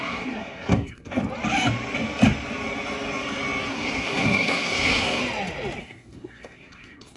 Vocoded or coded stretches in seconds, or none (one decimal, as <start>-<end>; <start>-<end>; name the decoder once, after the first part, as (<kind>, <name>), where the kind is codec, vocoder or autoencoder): 0.0-1.2 (codec, SNAC); 3.7-5.2; 5.8-7.2